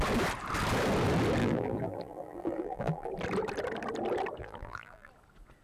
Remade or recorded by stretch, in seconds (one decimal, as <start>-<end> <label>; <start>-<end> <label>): 0.0-1.4 recorded; 1.4-3.1 remade; 3.1-4.4 recorded; 4.4-5.1 remade; 5.1-5.6 recorded